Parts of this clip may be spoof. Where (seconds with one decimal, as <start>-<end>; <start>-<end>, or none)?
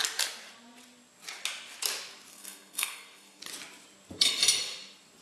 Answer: 2.3-3.4